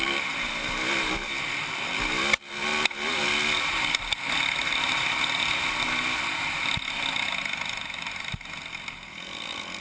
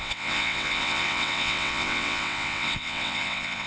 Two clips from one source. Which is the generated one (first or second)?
second